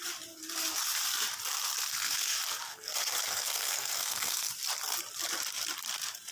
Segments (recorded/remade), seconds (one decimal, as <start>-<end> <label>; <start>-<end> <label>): 0.0-2.7 recorded; 2.7-4.5 remade; 4.5-6.3 recorded

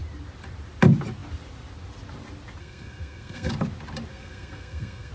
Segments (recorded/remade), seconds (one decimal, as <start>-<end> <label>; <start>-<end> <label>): 0.0-2.6 recorded; 2.6-3.5 remade; 3.5-4.1 recorded; 4.1-5.1 remade

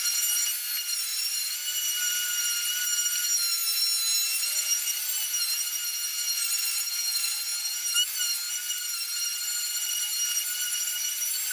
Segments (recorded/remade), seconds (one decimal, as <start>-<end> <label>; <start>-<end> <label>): 0.0-11.5 recorded